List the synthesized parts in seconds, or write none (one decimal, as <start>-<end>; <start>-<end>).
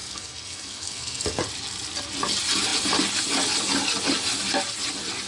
0.0-1.4